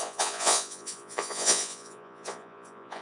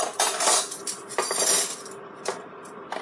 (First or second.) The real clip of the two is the second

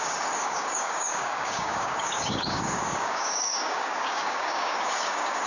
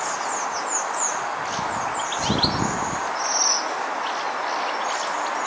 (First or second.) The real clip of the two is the second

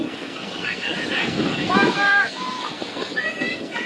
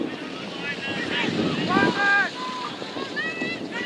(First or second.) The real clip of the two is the second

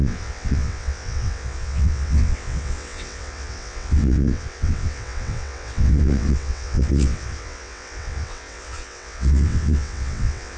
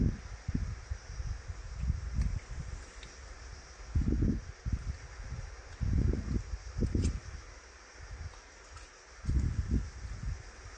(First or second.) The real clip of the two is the second